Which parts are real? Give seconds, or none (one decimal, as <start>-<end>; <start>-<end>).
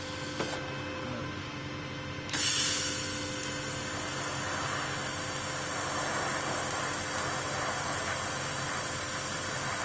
0.0-9.8